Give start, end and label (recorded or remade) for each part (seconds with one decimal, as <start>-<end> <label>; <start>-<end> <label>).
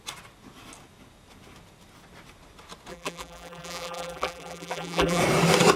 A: 0.0-2.9 recorded; 2.9-5.2 remade; 5.2-5.8 recorded